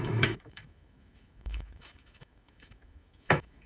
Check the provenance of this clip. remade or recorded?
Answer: remade